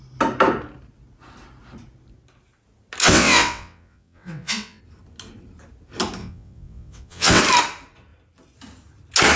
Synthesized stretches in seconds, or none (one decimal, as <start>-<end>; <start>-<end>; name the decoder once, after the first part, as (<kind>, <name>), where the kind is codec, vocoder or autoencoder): 3.0-4.8 (vocoder, WaveNeXt); 6.2-7.4